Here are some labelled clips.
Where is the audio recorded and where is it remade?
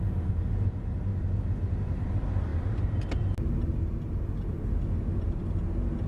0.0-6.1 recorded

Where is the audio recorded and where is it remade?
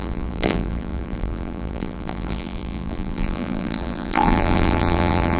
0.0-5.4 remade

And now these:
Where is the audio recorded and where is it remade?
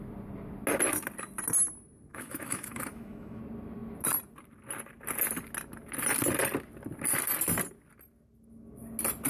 0.0-2.1 recorded; 2.1-3.4 remade; 3.4-9.3 recorded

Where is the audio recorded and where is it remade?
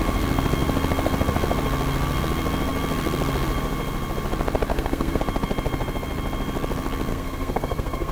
0.0-4.7 recorded; 4.7-5.2 remade; 5.2-7.1 recorded; 7.1-8.1 remade